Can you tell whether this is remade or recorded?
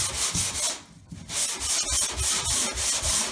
recorded